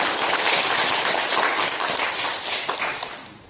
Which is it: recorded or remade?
recorded